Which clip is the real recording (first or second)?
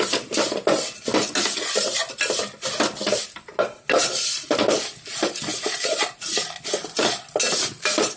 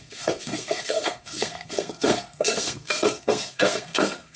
first